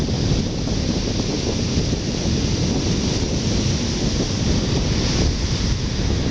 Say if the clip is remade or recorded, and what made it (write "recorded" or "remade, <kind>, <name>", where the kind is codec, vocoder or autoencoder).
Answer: recorded